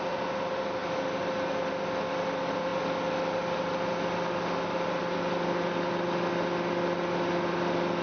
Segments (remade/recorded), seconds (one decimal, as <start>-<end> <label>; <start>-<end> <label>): 0.0-8.0 recorded